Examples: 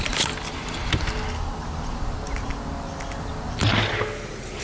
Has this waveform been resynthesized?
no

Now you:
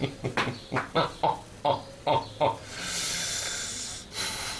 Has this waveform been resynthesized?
no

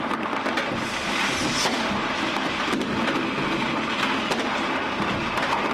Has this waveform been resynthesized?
no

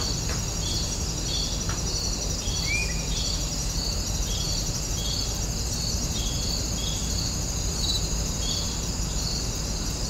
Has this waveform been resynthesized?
no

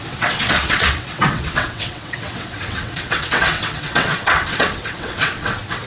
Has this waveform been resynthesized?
yes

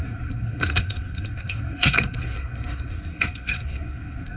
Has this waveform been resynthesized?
yes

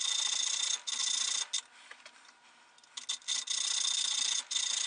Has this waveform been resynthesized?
no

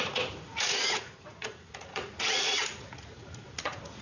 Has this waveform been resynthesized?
yes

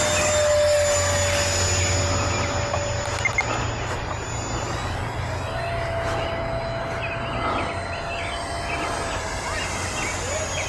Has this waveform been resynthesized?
no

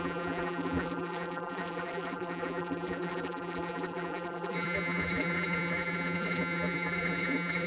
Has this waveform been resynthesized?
yes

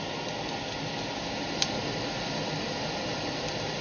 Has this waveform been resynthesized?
no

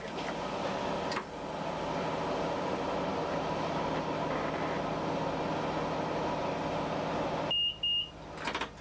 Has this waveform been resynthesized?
no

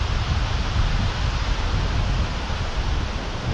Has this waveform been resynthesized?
no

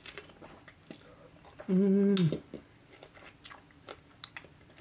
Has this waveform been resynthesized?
no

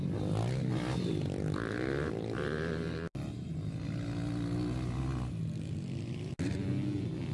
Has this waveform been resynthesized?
no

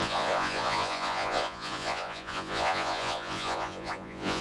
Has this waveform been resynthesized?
yes